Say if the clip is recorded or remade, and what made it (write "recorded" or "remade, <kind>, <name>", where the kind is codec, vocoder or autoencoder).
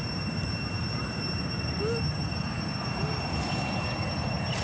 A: recorded